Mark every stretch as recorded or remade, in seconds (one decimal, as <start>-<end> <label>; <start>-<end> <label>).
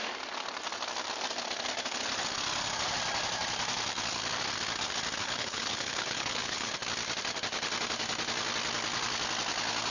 0.0-5.2 recorded; 5.2-6.7 remade; 6.7-9.9 recorded